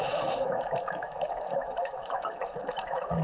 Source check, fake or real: fake